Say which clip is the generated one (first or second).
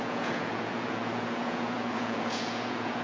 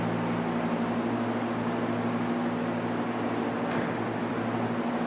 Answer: first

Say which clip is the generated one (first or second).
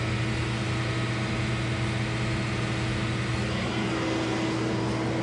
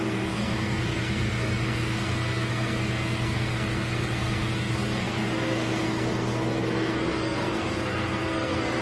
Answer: second